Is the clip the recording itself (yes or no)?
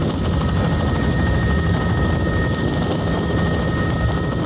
yes